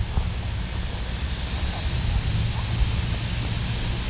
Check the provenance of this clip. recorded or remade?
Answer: recorded